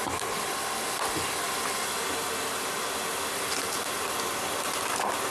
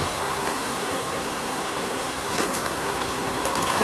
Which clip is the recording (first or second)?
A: first